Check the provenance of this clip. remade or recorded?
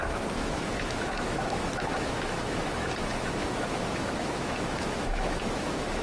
remade